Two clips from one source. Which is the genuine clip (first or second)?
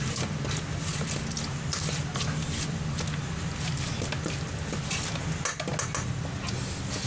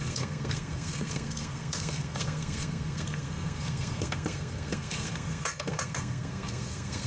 first